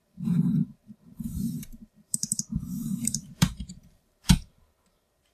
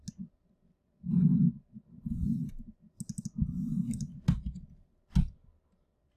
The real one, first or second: second